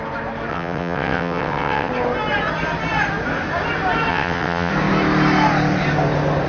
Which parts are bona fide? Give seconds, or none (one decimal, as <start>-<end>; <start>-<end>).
0.0-0.5; 1.9-4.1; 4.7-6.5